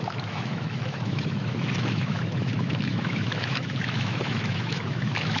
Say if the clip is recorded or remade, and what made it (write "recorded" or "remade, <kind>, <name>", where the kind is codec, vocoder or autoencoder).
remade, autoencoder, DAC-VAE